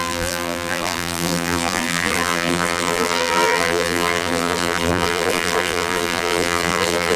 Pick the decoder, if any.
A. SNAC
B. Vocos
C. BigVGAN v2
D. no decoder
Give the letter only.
C